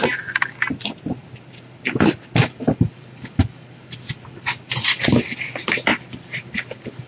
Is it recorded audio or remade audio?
recorded